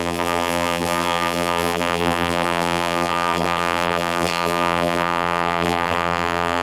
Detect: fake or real fake